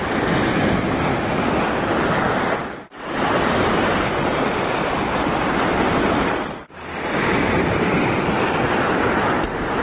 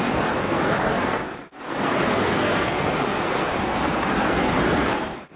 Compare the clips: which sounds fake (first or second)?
second